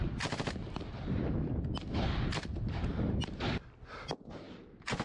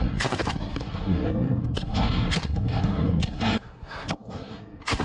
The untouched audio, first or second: first